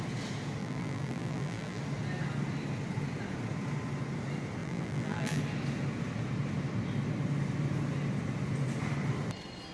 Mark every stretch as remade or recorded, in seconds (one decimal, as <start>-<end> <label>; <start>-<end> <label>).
0.0-0.6 recorded; 0.6-1.8 remade; 1.8-4.6 recorded; 4.6-5.4 remade; 5.4-9.7 recorded